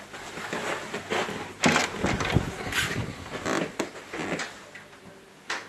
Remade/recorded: recorded